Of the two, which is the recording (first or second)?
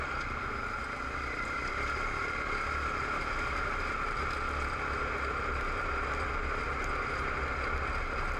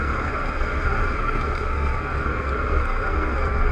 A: first